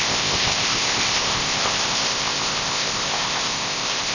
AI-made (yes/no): yes